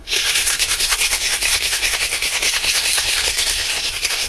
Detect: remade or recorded remade